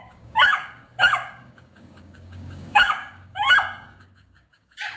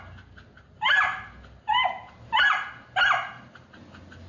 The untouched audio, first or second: second